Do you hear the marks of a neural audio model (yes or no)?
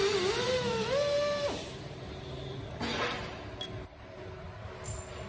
no